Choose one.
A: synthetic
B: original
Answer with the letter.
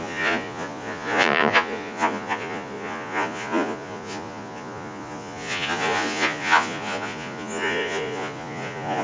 A